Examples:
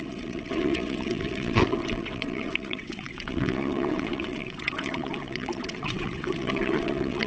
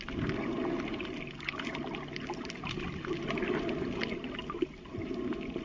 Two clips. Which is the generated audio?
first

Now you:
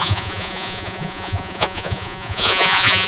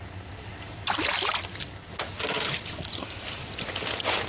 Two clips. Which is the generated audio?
first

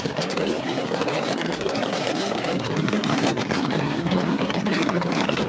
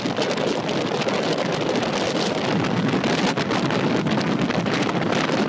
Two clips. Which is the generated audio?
first